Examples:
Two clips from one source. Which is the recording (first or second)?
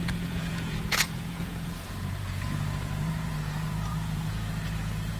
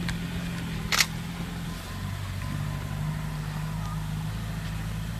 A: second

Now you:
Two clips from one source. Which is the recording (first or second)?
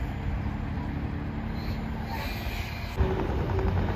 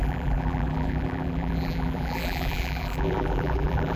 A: first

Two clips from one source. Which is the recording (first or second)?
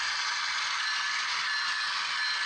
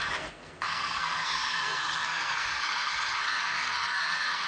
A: first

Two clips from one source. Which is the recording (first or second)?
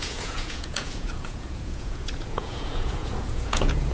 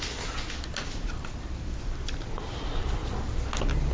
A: second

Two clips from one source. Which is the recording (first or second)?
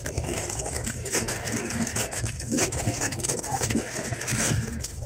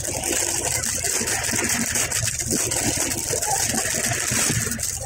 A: second